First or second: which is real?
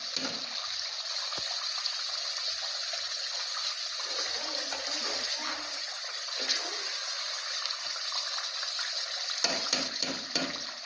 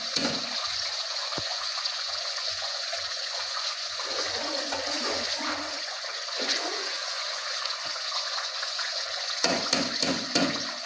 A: first